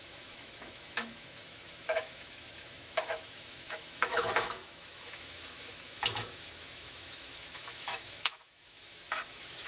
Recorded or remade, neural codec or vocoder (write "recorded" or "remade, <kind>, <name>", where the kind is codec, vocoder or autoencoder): remade, autoencoder, DAC-VAE